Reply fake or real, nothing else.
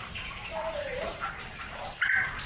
fake